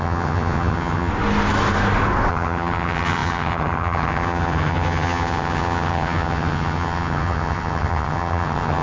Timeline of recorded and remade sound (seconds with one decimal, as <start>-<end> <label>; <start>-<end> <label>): 0.0-1.1 remade; 1.1-2.3 recorded; 2.3-8.8 remade